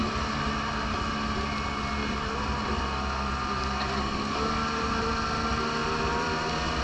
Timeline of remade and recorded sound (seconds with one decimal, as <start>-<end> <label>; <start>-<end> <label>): 0.0-2.0 recorded; 2.0-2.8 remade; 2.8-5.8 recorded; 5.8-6.3 remade; 6.3-6.8 recorded